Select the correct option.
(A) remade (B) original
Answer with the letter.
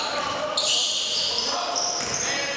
B